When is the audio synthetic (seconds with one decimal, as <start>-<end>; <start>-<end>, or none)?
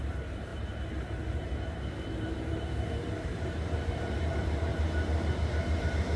0.0-4.7; 5.8-6.2